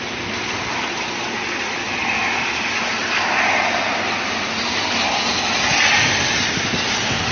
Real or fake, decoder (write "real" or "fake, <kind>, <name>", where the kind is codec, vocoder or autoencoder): real